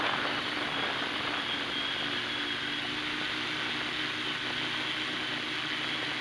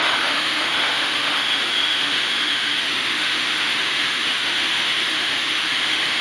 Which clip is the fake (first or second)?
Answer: second